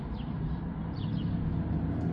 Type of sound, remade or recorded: remade